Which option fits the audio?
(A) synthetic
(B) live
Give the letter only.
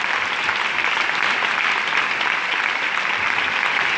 A